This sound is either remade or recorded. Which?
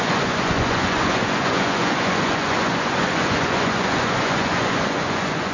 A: remade